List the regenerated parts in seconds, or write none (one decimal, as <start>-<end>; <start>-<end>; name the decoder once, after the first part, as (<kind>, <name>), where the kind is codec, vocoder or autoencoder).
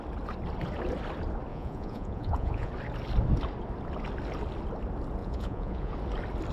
1.5-2.7 (vocoder, Vocos); 5.2-5.9